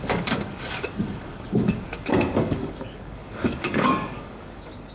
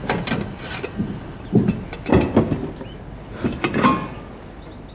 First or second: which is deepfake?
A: first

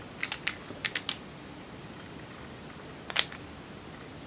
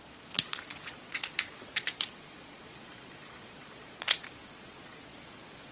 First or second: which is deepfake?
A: second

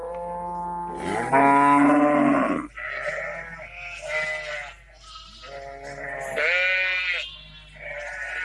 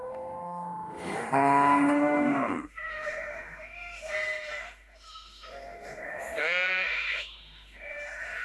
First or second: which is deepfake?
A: second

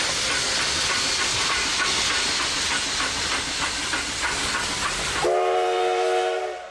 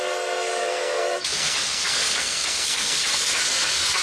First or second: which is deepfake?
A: second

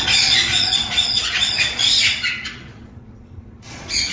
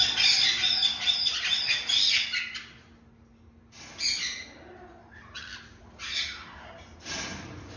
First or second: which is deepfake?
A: first